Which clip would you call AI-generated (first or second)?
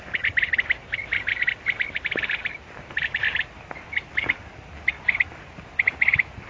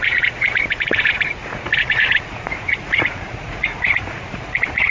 second